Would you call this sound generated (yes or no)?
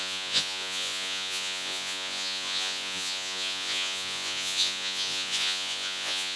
yes